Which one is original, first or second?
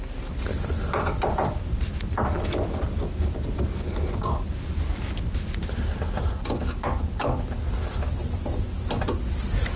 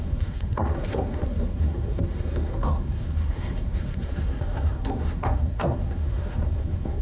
first